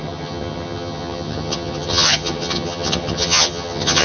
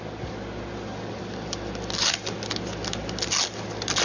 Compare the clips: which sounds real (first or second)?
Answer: second